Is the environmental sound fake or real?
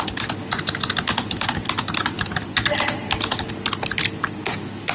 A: real